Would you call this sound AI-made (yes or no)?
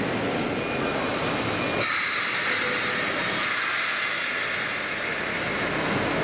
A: no